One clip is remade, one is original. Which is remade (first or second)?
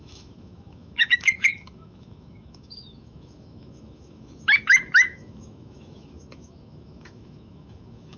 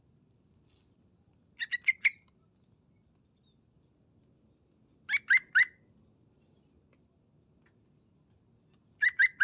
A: first